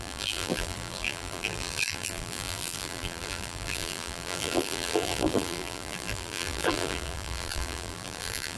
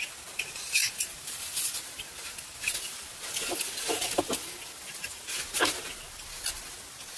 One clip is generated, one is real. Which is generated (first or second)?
first